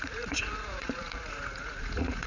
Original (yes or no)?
no